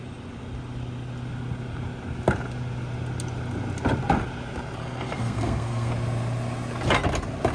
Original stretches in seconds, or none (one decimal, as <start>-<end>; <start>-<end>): 0.0-4.8; 5.9-7.5